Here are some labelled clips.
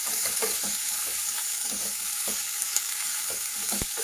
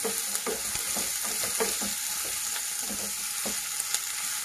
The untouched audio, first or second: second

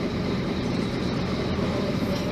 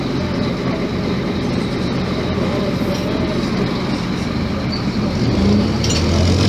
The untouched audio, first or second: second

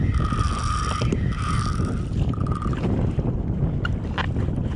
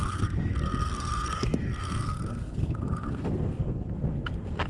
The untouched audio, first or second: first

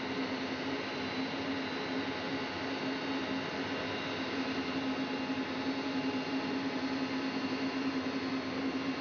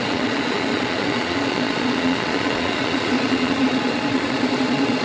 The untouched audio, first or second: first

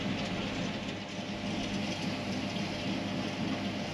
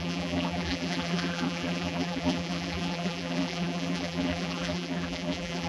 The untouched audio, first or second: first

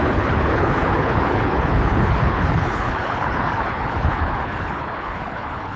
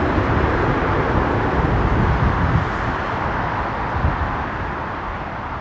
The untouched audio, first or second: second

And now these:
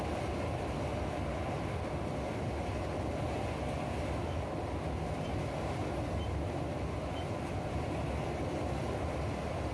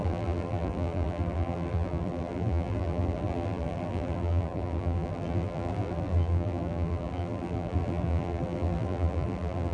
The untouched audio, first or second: first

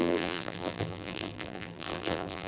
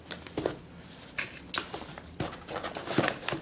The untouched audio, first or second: second